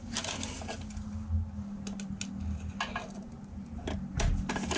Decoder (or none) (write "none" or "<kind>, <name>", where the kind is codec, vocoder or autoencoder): none